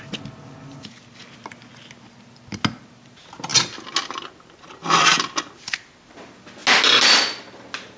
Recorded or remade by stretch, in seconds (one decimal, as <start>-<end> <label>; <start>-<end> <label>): 0.0-8.0 recorded